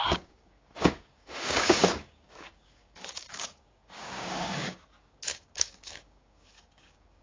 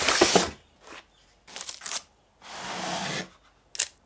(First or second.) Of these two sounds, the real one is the second